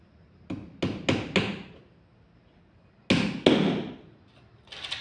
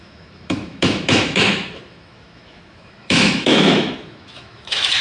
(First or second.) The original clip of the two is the first